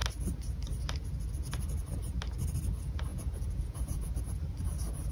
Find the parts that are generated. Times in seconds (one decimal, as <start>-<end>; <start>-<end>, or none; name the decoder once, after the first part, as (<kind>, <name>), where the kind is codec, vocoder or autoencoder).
3.1-4.1 (vocoder, Vocos)